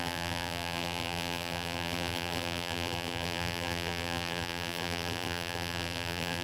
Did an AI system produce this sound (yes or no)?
yes